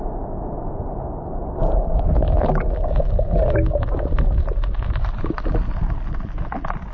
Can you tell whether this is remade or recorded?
recorded